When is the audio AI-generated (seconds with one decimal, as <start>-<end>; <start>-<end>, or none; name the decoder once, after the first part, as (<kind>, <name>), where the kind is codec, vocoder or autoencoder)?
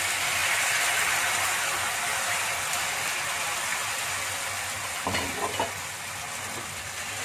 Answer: none